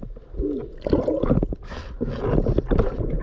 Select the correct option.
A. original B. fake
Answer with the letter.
A